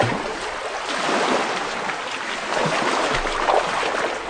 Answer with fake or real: real